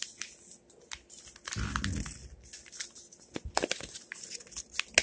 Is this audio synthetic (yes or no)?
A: no